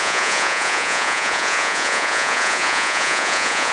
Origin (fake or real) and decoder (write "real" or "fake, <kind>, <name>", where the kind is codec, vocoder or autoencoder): fake, vocoder, Vocos